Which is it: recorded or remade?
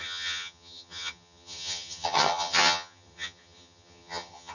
remade